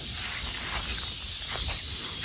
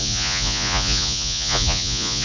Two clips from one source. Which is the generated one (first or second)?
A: second